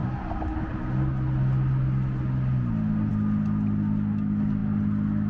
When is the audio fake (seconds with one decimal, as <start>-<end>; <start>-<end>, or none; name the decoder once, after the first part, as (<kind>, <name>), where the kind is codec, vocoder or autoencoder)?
none